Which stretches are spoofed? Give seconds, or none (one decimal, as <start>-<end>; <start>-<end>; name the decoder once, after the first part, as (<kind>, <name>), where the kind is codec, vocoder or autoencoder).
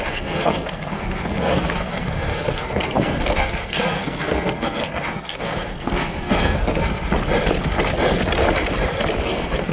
0.0-6.9 (codec, SNAC); 9.2-9.7